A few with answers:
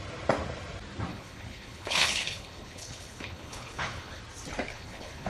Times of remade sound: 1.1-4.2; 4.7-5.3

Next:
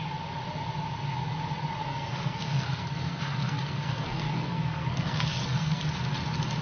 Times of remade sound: 1.8-5.8